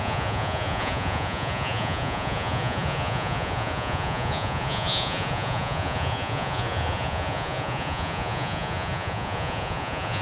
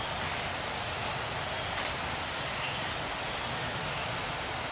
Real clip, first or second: second